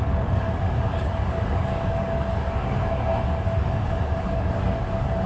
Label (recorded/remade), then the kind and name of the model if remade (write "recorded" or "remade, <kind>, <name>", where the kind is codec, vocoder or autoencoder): remade, codec, DAC